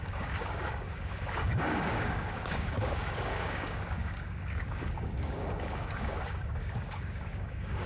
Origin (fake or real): fake